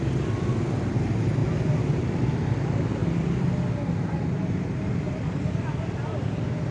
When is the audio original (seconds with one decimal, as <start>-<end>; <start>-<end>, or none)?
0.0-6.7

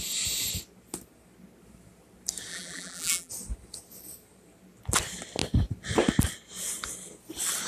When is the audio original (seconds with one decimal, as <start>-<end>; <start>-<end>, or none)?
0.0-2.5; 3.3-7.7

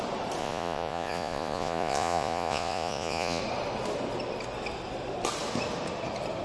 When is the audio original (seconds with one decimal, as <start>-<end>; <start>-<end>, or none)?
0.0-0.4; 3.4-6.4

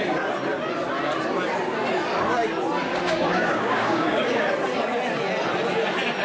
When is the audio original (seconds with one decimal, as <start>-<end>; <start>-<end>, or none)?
0.0-2.9; 4.5-6.2